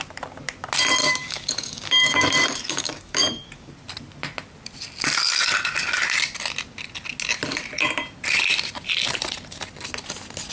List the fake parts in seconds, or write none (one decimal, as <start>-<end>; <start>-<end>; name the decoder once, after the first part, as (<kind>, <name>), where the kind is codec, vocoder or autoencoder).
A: 1.0-3.7 (codec, DAC)